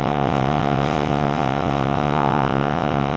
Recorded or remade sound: remade